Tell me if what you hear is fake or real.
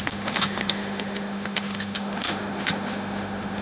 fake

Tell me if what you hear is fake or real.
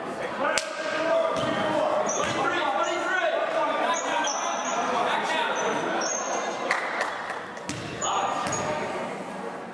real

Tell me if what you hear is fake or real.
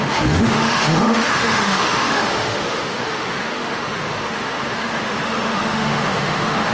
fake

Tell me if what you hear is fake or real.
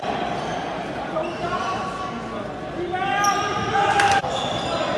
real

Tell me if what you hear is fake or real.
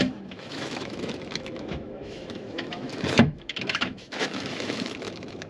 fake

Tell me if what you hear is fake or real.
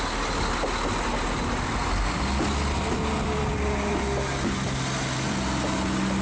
real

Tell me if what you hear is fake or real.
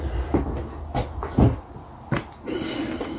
real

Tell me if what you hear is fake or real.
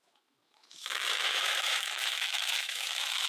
fake